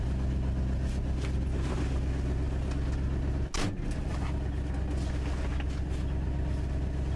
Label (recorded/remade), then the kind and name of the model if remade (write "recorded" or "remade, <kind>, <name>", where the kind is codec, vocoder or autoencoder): recorded